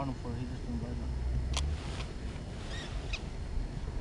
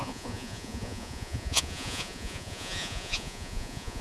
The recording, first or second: first